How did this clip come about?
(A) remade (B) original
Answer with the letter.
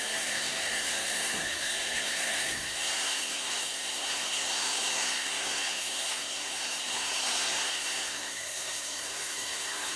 A